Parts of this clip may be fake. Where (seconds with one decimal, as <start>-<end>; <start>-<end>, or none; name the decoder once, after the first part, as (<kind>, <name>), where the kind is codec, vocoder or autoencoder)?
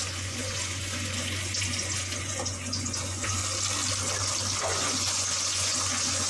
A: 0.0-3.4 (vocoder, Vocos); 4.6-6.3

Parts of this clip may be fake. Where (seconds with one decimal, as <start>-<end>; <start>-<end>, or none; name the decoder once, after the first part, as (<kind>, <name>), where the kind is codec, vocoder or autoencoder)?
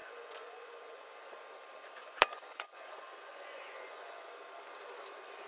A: 0.0-1.2 (vocoder, Vocos); 2.0-4.3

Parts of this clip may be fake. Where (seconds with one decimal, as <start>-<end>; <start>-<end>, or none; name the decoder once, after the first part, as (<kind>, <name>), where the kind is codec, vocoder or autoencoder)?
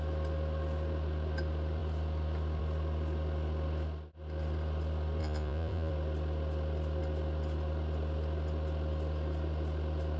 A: 5.2-5.9 (vocoder, Vocos)